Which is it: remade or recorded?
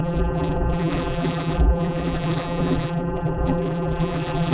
remade